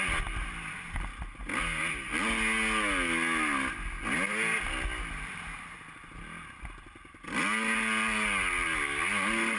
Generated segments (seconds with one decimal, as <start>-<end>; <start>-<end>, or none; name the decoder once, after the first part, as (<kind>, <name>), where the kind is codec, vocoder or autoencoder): none

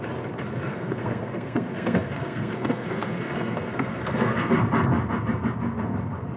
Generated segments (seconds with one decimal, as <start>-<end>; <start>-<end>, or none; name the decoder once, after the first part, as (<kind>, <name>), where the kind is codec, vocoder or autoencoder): 0.7-4.5 (codec, SNAC)

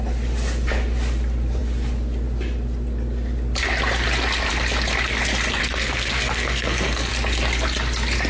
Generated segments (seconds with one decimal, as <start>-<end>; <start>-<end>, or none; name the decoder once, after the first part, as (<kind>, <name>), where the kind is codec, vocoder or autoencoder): 5.6-7.1 (codec, SNAC)

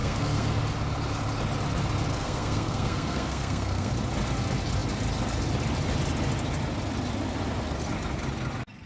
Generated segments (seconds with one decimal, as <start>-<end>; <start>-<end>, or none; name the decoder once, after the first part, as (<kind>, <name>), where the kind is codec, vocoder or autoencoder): 0.0-0.6 (codec, SNAC); 2.1-3.9

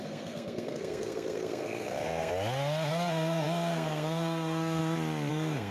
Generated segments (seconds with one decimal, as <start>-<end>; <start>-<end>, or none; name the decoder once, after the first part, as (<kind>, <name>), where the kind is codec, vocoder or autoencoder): 0.0-2.3 (codec, SNAC); 2.9-4.8; 5.3-5.7

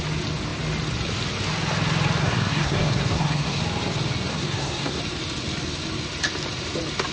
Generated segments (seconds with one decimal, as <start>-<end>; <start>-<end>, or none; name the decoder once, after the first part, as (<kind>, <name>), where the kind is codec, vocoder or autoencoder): 2.2-3.6 (codec, SNAC); 4.3-5.0

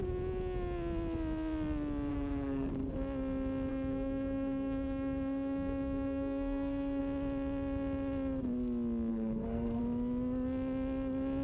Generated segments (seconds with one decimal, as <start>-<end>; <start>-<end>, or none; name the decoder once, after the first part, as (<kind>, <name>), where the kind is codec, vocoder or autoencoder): 2.1-2.7 (codec, SNAC); 3.7-7.0; 9.1-9.8

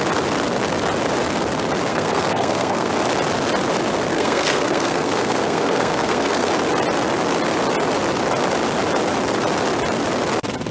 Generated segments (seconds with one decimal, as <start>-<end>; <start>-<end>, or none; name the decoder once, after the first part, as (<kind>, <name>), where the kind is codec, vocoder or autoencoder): 1.9-2.9 (codec, SNAC); 4.1-6.5